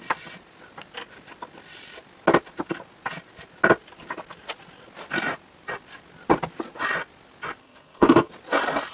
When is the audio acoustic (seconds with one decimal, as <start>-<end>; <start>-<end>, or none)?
0.0-7.6; 8.3-8.9